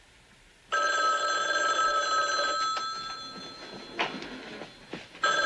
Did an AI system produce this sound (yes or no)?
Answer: no